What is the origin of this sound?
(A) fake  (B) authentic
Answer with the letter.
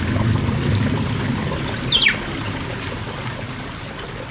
B